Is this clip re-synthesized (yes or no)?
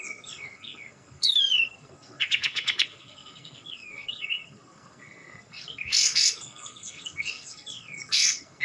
yes